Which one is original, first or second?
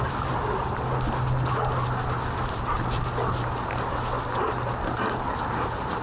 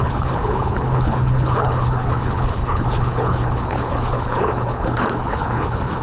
first